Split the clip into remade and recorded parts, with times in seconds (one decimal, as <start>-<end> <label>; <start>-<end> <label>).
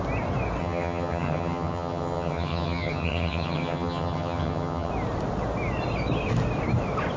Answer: 0.0-0.6 recorded; 0.6-4.9 remade; 4.9-7.2 recorded